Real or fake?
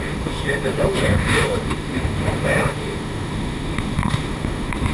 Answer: fake